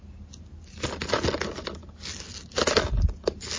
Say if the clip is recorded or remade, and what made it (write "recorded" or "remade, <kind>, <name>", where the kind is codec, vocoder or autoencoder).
recorded